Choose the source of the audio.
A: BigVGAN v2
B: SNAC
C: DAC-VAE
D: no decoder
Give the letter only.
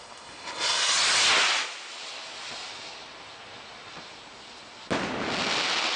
D